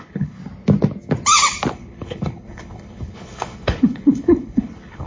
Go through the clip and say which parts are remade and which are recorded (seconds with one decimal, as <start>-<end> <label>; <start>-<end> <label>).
0.0-0.4 remade; 0.4-1.7 recorded; 1.7-5.1 remade